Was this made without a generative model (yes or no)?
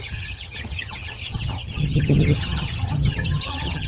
no